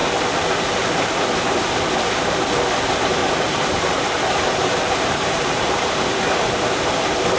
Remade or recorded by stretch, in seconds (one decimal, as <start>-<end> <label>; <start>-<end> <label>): 0.0-3.2 recorded; 3.2-6.3 remade; 6.3-7.4 recorded